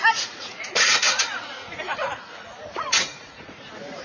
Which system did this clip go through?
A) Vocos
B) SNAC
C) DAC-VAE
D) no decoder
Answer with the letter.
A